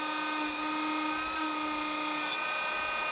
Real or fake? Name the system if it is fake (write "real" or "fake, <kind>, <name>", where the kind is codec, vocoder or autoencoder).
real